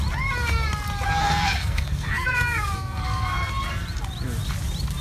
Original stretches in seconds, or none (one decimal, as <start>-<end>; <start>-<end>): 0.0-1.2; 3.5-5.0